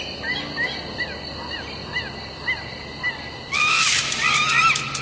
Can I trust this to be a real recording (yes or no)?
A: yes